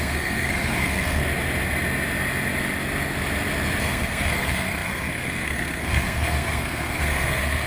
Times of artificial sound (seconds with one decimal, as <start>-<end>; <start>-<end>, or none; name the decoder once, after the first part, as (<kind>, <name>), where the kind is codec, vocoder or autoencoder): 0.0-1.2 (codec, SNAC); 3.8-7.7